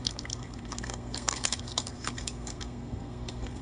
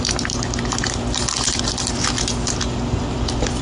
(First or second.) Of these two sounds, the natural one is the second